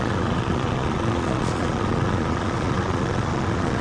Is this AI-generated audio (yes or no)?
yes